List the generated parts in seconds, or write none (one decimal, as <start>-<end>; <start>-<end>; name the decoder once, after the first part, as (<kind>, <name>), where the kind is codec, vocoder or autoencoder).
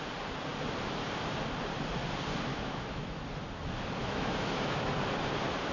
2.5-3.2 (autoencoder, DAC-VAE); 4.0-4.9